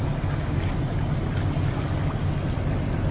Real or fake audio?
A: real